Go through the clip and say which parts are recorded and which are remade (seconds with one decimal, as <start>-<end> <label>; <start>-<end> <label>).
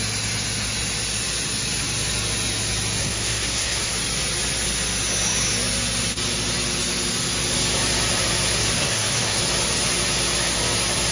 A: 0.0-3.0 recorded; 3.0-3.9 remade; 3.9-8.6 recorded; 8.6-9.4 remade; 9.4-11.1 recorded